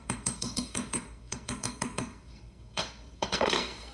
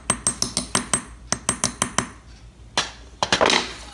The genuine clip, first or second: second